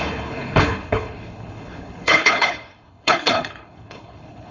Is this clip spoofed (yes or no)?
yes